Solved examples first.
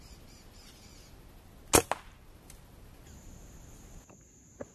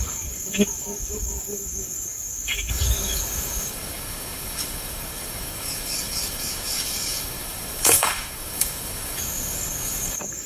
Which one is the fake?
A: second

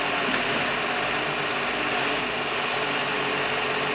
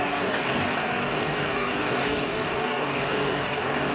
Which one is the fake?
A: second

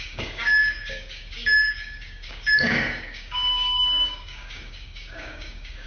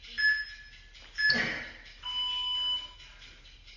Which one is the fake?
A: first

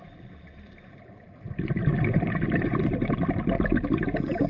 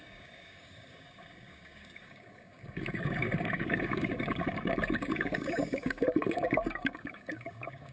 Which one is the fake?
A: second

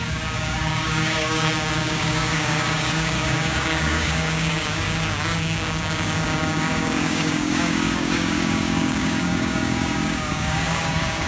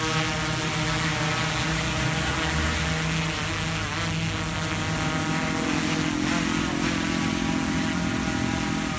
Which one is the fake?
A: first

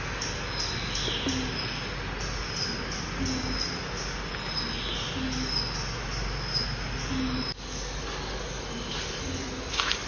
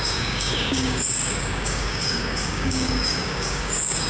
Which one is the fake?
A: second